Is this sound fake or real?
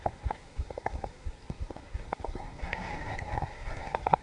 fake